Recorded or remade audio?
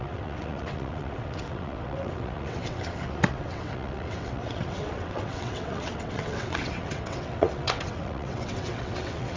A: remade